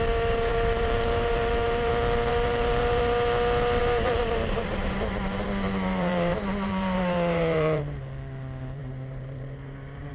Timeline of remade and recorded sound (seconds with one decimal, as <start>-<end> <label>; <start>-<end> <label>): 0.0-0.5 recorded; 0.5-1.9 remade; 1.9-2.3 recorded; 2.3-3.0 remade; 3.0-3.8 recorded; 3.8-7.8 remade; 7.8-8.8 recorded; 8.8-10.1 remade